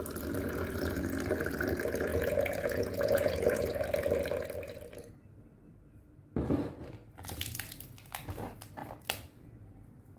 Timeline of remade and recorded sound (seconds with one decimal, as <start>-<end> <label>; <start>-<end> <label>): 0.0-2.1 recorded; 2.1-3.8 remade; 3.8-10.2 recorded